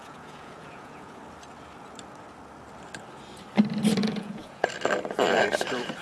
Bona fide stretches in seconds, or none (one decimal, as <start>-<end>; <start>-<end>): 1.2-4.0; 4.7-6.0